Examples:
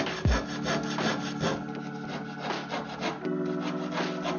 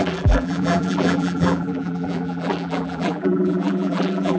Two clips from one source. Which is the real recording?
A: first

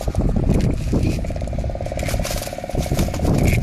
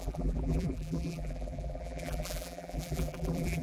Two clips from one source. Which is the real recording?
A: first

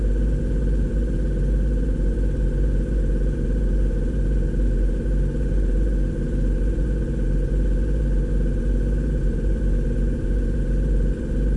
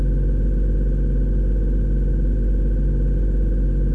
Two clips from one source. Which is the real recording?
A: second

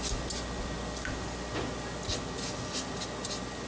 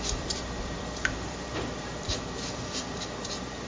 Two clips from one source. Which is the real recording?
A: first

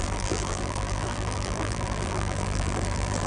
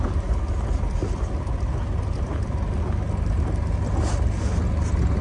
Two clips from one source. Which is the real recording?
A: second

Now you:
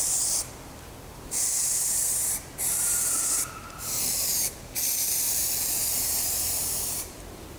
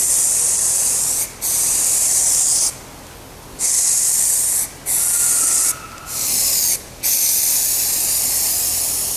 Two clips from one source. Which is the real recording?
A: second